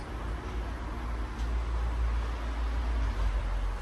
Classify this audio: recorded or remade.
recorded